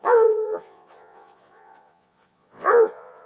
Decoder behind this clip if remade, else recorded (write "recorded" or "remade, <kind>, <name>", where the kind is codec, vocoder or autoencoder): remade, vocoder, Vocos